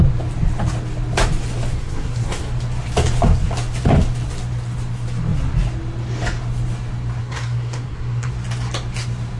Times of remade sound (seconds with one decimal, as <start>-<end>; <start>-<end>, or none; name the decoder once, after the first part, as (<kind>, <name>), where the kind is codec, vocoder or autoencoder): 1.7-2.5 (codec, SNAC); 7.2-8.3